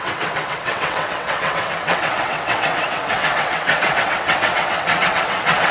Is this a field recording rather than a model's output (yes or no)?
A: no